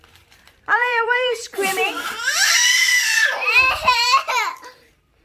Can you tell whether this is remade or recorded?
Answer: remade